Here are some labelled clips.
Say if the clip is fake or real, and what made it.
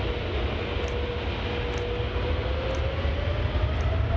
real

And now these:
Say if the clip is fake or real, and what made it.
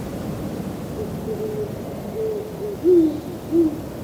real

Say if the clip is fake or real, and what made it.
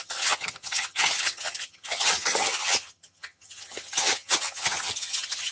fake, vocoder, HiFi-GAN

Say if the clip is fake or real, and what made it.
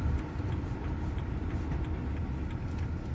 real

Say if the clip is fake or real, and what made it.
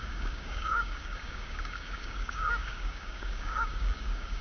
fake, codec, DAC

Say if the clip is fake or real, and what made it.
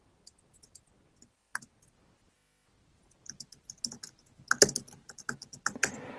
real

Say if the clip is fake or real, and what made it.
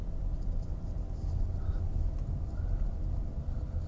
real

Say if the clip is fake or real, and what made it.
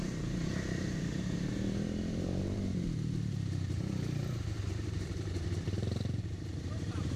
fake, vocoder, BigVGAN v2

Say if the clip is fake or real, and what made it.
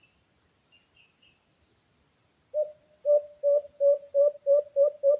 real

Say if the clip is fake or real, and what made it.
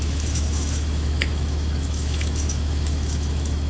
fake, autoencoder, DAC-VAE